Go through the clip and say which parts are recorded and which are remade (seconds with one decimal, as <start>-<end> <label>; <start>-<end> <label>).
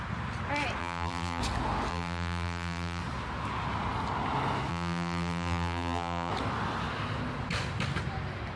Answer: 0.0-0.8 recorded; 0.8-1.4 remade; 1.4-1.9 recorded; 1.9-3.0 remade; 3.0-4.7 recorded; 4.7-6.3 remade; 6.3-8.6 recorded